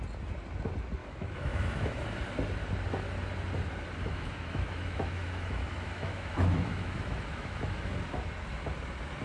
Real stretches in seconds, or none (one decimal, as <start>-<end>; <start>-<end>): 0.0-1.0; 2.0-4.0; 7.9-9.2